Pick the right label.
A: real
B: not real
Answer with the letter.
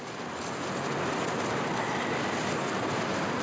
A